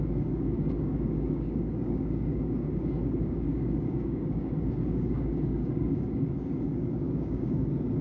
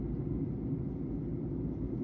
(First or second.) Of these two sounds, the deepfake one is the first